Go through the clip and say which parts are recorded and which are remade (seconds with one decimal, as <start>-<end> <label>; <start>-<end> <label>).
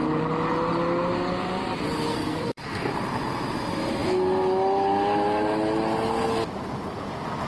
0.0-2.1 recorded; 2.1-2.9 remade; 2.9-7.5 recorded